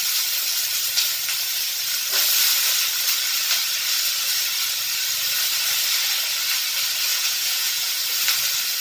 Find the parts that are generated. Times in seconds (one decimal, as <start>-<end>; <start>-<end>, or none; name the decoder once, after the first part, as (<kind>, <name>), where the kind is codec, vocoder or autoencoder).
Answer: 7.1-7.9 (vocoder, Vocos)